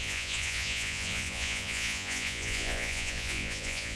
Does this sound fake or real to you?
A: fake